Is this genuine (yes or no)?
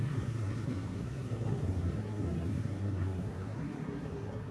no